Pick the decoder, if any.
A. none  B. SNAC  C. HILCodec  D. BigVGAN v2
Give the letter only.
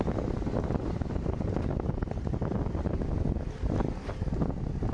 A